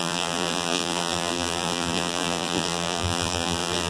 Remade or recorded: remade